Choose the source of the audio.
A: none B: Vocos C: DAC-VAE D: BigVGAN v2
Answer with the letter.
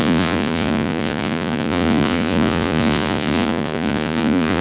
B